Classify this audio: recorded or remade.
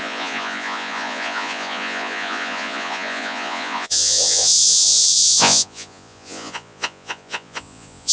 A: remade